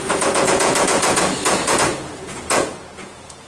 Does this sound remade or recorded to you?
remade